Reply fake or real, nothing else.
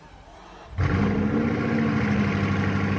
real